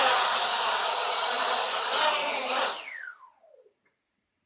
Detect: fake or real fake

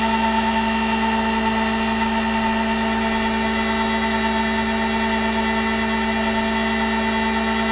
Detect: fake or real real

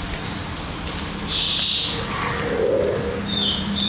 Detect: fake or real fake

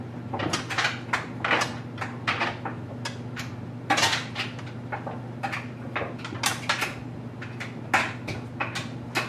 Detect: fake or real real